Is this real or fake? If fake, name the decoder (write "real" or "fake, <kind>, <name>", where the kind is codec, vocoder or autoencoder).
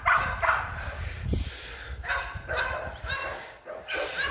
fake, vocoder, BigVGAN v2